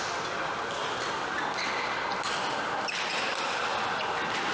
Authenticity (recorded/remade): recorded